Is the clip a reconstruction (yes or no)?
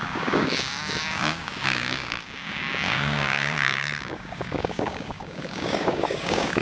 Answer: yes